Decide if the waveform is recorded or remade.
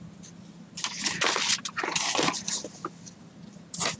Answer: recorded